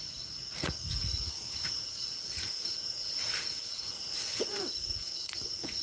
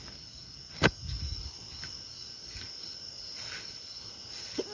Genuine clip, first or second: second